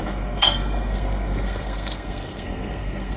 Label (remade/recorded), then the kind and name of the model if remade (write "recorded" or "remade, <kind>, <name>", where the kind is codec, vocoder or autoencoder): remade, codec, SNAC